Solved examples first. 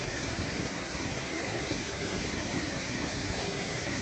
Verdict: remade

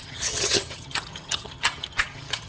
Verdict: remade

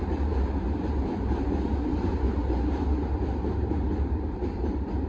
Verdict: remade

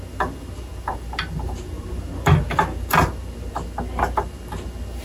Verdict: recorded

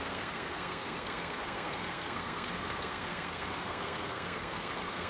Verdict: remade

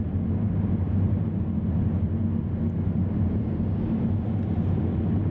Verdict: recorded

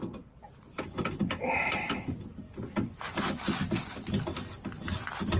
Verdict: recorded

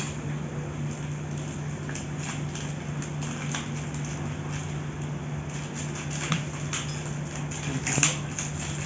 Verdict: recorded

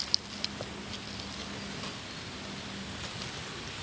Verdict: recorded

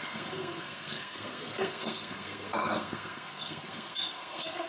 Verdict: remade